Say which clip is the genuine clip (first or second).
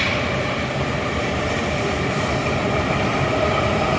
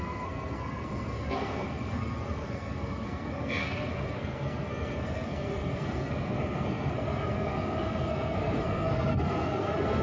first